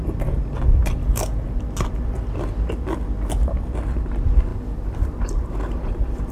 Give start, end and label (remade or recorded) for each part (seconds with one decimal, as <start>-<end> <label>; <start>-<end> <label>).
0.0-4.5 recorded; 4.5-6.3 remade